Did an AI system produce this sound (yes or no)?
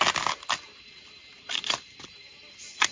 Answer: no